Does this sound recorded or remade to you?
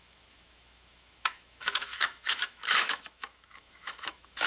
remade